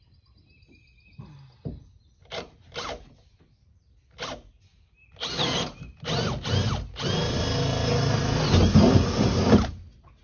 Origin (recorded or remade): recorded